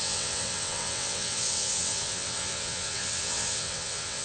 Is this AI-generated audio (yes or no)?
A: yes